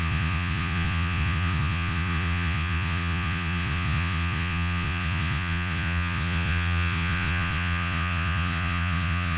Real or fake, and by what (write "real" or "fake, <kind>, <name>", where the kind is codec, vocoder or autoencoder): fake, vocoder, Vocos